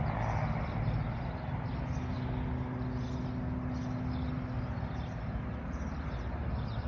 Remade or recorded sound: recorded